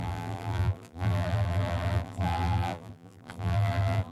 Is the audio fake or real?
fake